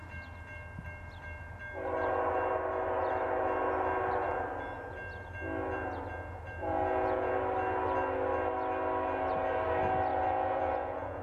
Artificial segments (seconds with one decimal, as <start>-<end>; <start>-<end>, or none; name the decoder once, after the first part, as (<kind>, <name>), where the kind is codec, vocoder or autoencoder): 6.6-7.3 (vocoder, Vocos); 10.1-11.2